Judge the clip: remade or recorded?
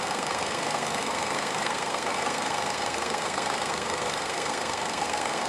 remade